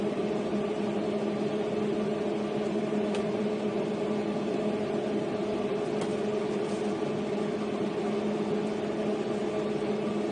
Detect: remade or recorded recorded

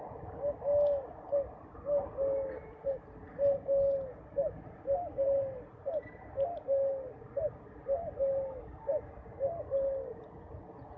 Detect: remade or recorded recorded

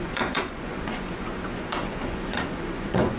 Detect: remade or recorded remade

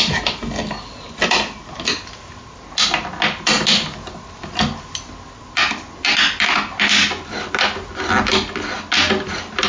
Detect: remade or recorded recorded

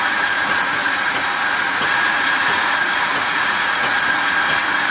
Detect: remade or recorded remade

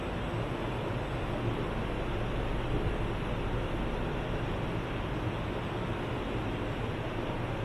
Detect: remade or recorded recorded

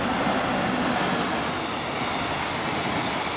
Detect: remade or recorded recorded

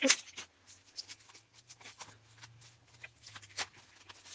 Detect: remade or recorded recorded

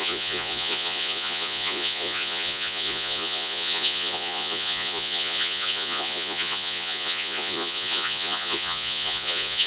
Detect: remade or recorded remade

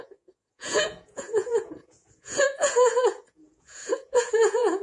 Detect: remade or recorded remade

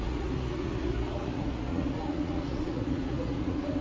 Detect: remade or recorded remade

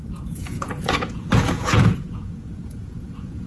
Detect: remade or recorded remade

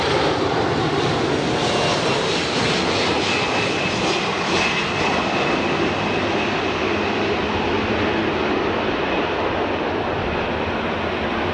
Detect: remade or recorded recorded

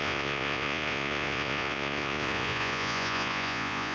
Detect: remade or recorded remade